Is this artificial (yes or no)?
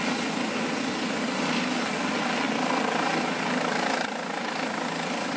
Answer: no